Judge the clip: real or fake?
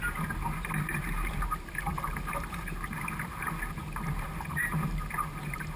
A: fake